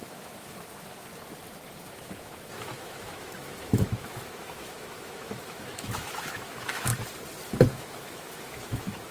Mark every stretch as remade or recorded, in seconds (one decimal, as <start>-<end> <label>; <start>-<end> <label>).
0.0-1.1 remade; 1.1-1.9 recorded; 1.9-6.9 remade; 6.9-7.7 recorded; 7.7-9.1 remade